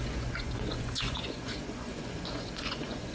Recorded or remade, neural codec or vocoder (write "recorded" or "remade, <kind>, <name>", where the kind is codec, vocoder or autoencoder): remade, vocoder, Vocos